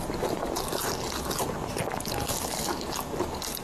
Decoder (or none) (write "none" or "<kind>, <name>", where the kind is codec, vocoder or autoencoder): none